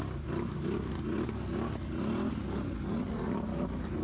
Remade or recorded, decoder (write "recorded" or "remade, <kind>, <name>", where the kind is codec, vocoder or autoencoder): recorded